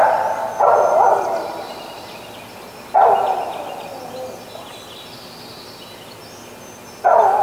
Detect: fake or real real